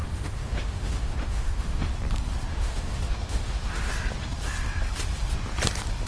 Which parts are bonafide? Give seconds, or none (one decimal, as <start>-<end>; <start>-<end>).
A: 1.9-2.5; 3.9-6.1